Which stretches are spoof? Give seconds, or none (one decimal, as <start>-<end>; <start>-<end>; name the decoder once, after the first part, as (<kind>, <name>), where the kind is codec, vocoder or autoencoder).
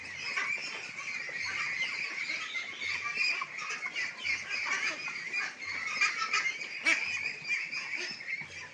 none